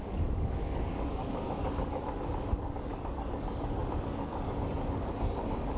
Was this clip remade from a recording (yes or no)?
yes